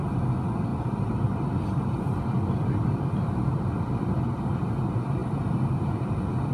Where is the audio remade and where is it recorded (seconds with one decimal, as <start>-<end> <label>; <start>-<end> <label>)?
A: 0.0-0.7 recorded; 0.7-4.4 remade; 4.4-6.5 recorded